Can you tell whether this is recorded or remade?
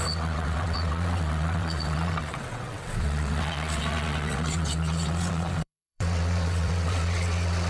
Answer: remade